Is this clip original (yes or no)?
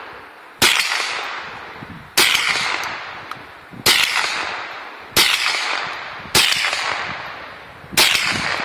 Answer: yes